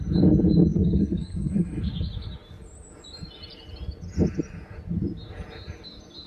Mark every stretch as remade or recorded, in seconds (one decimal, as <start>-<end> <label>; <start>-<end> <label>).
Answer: 0.0-0.7 recorded; 0.7-1.9 remade; 1.9-6.3 recorded